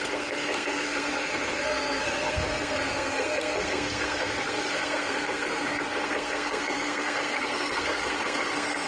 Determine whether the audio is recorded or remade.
remade